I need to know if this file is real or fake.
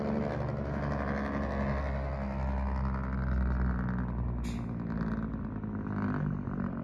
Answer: real